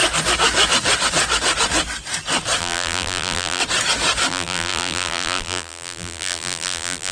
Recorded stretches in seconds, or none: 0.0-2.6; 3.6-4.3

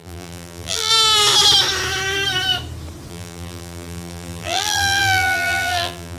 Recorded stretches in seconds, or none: 0.9-3.1

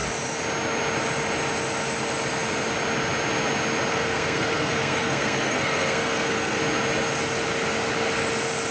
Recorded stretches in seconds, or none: 0.0-3.9; 6.6-8.7

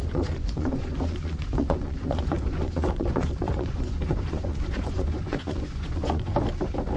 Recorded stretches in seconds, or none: 6.3-7.0

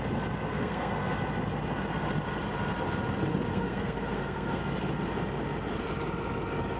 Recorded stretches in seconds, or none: 0.0-0.5; 1.1-3.5; 4.6-6.8

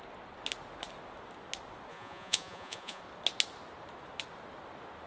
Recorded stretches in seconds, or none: 0.0-1.9; 3.0-5.1

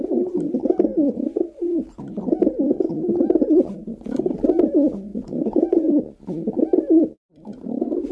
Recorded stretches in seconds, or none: 0.0-0.9; 1.7-5.1; 5.9-8.1

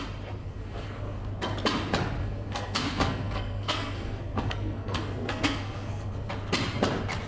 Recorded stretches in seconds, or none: 0.0-0.4; 1.2-2.2; 6.3-7.3